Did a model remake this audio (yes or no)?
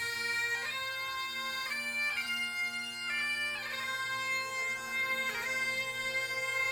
yes